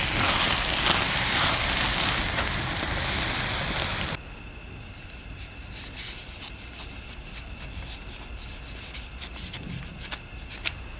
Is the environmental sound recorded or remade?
recorded